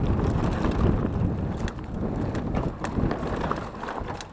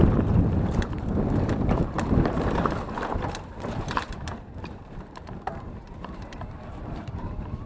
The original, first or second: first